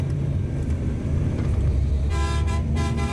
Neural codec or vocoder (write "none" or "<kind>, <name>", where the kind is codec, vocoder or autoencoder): vocoder, BigVGAN v2